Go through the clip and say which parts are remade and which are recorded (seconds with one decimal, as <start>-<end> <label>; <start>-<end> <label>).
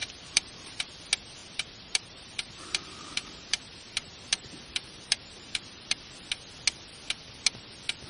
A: 0.0-0.9 remade; 0.9-1.4 recorded; 1.4-6.1 remade; 6.1-8.1 recorded